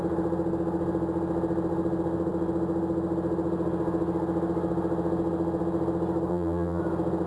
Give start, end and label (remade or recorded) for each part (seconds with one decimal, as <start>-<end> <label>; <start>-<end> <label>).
0.0-6.3 recorded; 6.3-6.8 remade; 6.8-7.3 recorded